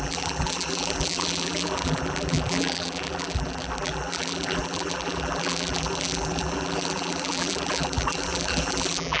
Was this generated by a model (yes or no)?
yes